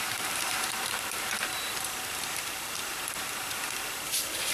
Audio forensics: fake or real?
fake